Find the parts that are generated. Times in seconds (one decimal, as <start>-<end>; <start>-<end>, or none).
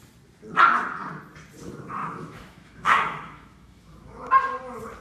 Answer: 2.0-4.3